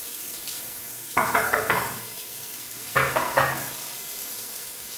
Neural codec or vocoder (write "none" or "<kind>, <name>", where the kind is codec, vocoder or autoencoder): codec, SNAC